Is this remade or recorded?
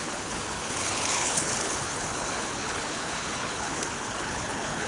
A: remade